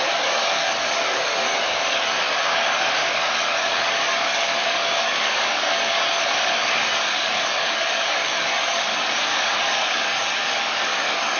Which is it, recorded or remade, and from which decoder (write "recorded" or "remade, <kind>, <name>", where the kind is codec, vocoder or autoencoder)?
remade, codec, DAC